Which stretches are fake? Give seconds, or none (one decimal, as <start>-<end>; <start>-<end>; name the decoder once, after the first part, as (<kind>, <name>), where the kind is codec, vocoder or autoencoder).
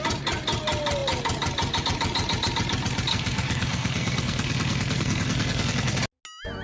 3.1-6.0 (codec, SNAC)